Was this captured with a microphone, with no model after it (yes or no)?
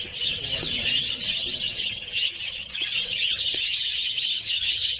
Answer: no